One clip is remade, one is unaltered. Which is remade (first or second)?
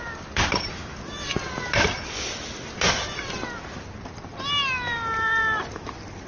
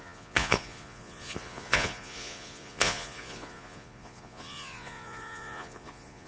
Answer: second